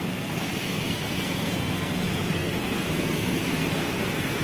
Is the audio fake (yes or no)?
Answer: yes